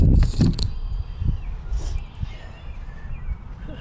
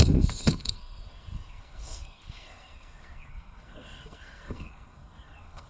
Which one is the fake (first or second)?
second